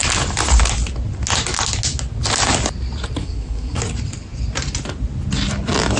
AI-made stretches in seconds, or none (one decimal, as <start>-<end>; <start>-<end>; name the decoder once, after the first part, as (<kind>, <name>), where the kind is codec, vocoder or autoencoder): 3.2-3.8 (codec, SNAC)